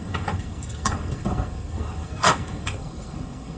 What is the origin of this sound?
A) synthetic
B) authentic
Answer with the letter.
A